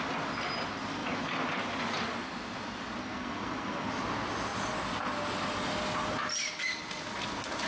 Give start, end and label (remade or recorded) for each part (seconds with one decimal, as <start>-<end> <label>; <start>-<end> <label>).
0.0-3.0 recorded; 3.0-3.9 remade; 3.9-7.7 recorded